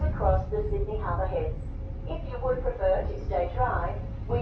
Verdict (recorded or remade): recorded